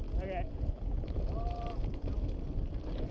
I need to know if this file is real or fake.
real